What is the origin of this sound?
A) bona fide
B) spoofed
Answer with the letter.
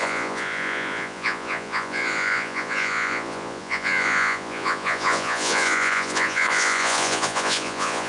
B